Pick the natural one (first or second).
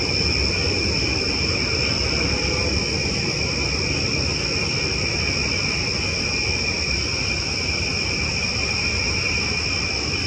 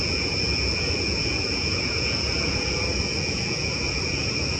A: first